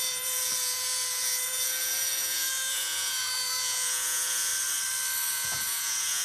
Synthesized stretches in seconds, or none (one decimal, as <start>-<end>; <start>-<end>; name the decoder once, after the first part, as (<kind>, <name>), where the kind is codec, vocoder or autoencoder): 0.0-4.5 (vocoder, Vocos); 5.3-6.2